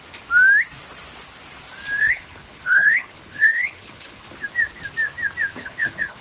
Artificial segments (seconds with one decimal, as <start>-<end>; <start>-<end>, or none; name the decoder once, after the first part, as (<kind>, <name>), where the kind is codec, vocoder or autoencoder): 2.0-4.3 (codec, HILCodec); 5.5-6.2